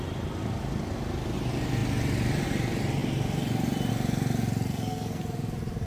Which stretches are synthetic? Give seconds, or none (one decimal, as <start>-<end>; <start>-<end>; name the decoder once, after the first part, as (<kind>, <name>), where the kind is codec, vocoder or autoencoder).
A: 4.7-5.2 (codec, SNAC)